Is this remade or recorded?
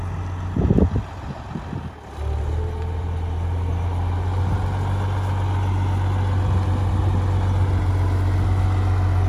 recorded